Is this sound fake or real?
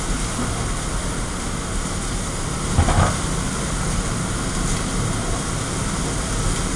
real